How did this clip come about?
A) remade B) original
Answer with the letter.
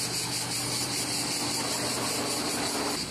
B